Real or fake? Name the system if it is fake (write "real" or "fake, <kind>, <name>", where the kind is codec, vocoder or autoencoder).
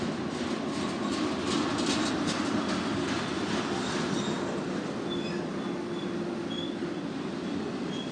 real